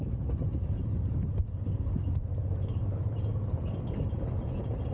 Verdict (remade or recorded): remade